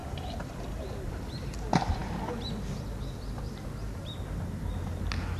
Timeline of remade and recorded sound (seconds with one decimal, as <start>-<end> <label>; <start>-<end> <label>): 0.0-5.4 recorded